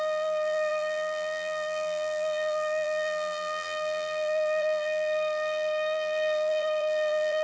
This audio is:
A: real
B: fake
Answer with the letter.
B